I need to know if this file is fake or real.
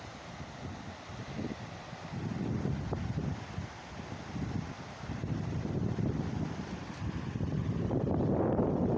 real